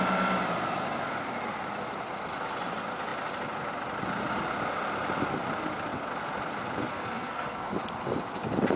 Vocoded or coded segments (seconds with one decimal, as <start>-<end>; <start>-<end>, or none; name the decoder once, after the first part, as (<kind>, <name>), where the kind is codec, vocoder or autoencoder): 6.9-7.7 (codec, SNAC)